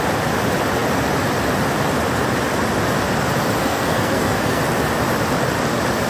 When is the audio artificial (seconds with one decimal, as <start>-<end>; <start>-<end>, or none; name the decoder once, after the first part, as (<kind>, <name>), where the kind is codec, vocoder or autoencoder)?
3.6-4.6 (codec, SNAC)